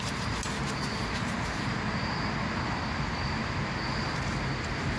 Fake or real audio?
real